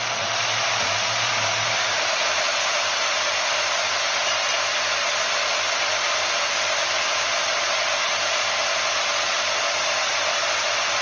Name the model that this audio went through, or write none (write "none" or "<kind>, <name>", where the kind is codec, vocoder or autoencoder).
none